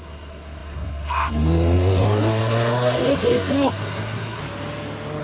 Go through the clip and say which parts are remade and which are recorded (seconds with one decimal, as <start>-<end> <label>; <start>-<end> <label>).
0.0-4.4 remade; 4.4-5.2 recorded